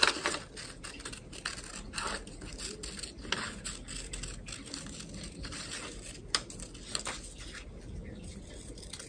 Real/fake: real